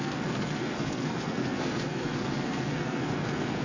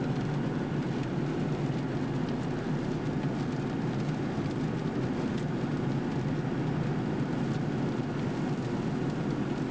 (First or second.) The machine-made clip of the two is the first